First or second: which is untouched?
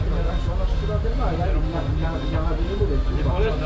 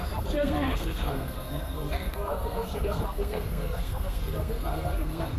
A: first